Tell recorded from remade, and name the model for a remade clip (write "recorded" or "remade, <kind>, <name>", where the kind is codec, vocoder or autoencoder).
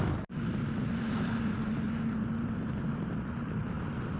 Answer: recorded